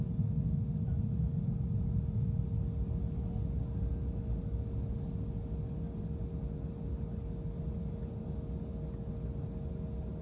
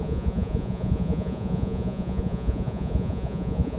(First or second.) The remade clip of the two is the second